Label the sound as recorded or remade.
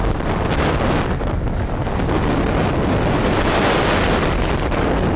recorded